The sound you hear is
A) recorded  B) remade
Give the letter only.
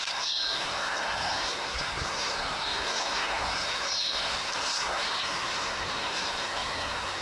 B